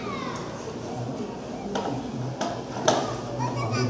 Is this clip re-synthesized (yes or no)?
no